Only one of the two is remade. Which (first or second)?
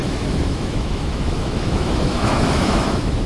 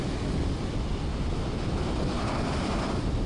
first